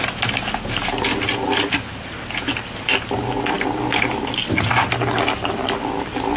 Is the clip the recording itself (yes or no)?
yes